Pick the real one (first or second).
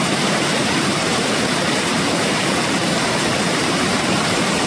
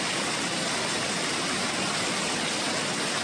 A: second